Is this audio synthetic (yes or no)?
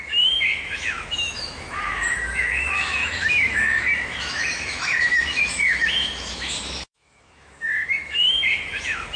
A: yes